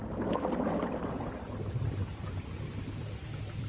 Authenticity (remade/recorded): recorded